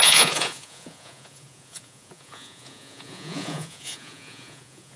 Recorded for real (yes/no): no